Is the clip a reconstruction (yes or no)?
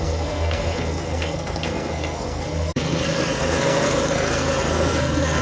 yes